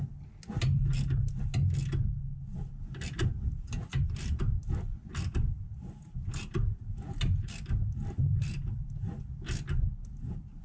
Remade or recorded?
recorded